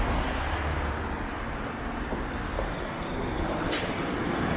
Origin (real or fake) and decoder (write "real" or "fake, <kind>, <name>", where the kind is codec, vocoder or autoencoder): real